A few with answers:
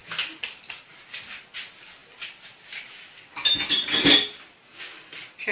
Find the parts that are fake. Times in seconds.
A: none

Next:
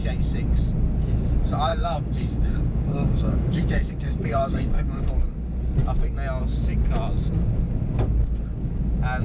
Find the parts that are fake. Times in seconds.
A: 1.7-5.1 (codec, DAC)